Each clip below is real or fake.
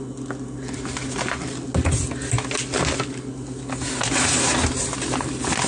real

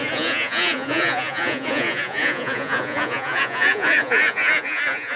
fake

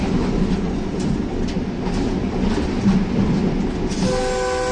real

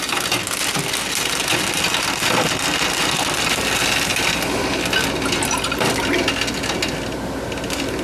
real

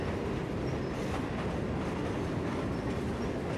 real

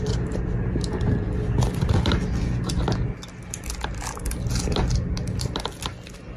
real